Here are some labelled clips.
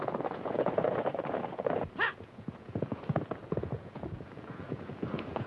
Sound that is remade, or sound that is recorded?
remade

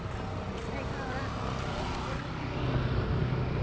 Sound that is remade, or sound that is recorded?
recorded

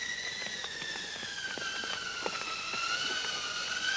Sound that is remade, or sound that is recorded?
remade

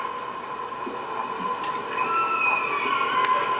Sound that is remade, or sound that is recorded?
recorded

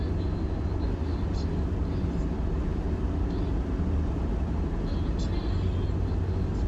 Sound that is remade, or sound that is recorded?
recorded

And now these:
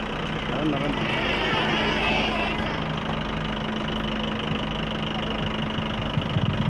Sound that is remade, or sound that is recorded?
recorded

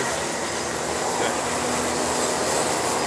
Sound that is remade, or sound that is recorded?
recorded